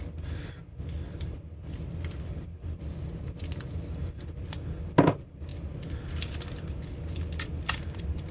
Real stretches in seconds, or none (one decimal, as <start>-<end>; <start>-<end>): 0.0-8.3